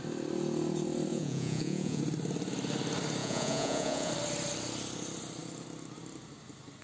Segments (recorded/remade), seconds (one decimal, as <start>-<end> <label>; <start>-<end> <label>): 0.0-1.1 recorded; 1.1-2.0 remade; 2.0-3.2 recorded; 3.2-4.1 remade; 4.1-6.8 recorded